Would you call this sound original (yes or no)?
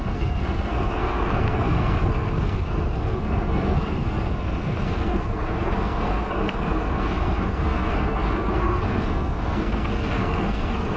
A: no